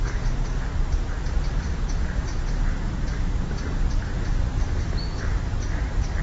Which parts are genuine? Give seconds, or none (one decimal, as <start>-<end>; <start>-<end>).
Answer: 0.0-0.7; 1.3-2.3; 3.5-4.3; 4.8-6.2